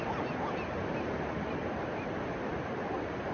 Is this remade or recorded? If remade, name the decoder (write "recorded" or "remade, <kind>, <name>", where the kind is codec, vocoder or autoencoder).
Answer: recorded